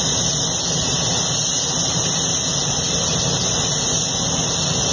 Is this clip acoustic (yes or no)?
yes